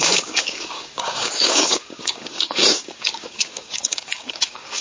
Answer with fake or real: fake